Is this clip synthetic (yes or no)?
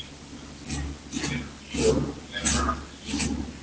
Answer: no